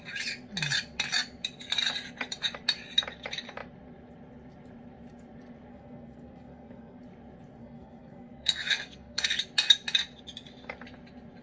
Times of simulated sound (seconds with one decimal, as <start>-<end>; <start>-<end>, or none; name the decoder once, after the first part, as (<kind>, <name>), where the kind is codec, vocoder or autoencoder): 5.7-7.0 (codec, SNAC); 7.6-9.3